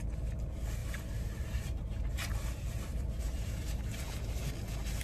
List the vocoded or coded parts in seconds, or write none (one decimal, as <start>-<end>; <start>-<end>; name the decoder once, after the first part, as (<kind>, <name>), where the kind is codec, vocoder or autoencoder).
0.8-3.8 (vocoder, BigVGAN v2)